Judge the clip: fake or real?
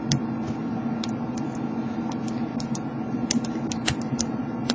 real